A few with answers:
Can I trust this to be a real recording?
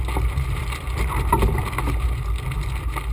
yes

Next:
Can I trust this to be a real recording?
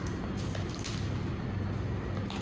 yes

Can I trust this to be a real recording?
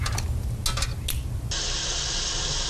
yes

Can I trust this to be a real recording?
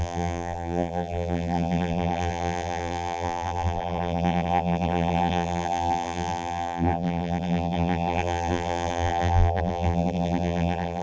no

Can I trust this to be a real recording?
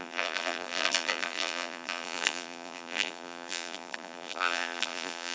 no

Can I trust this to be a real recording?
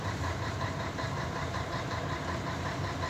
no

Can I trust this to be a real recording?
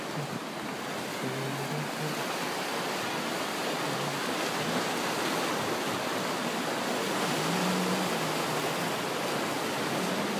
yes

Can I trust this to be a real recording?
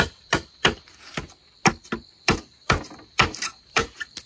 yes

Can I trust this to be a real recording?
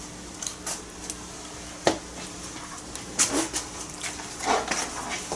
yes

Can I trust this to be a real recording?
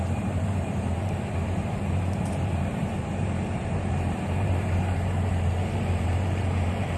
no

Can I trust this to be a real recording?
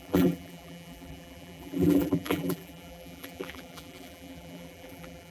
no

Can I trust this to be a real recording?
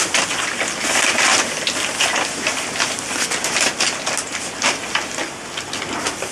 yes